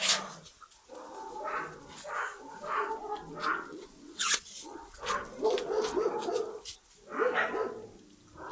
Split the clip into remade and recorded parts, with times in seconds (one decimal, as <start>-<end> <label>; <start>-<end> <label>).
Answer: 0.0-3.7 recorded; 3.7-4.3 remade; 4.3-8.5 recorded